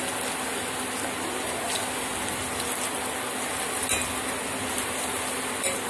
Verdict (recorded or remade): recorded